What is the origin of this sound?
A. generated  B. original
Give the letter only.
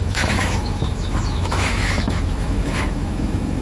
A